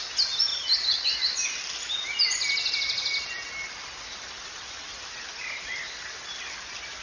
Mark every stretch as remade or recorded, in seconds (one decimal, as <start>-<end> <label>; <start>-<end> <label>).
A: 0.0-7.0 recorded